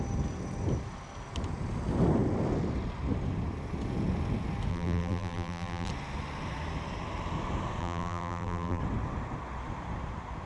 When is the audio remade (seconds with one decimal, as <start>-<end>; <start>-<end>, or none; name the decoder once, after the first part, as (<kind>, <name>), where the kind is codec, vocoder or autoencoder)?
4.7-5.9 (vocoder, BigVGAN v2); 7.8-8.8